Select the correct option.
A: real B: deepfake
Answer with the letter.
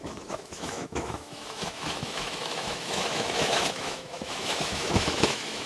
B